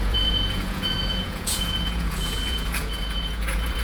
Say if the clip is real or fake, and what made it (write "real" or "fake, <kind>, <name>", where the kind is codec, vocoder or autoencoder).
fake, vocoder, Vocos